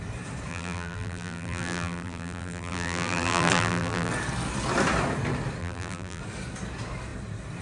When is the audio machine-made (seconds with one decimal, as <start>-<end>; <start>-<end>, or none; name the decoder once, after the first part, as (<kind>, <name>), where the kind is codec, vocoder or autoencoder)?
0.5-4.1 (vocoder, BigVGAN v2); 5.6-6.2